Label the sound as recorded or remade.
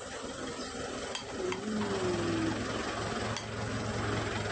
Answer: recorded